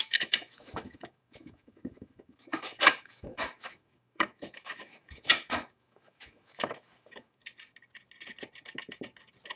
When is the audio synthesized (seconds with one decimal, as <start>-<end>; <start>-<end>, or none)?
0.0-7.4